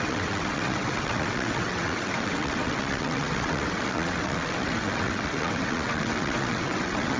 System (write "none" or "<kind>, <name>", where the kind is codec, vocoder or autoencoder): vocoder, WaveNeXt